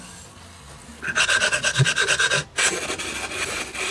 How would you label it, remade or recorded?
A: recorded